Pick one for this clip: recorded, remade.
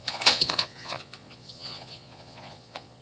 remade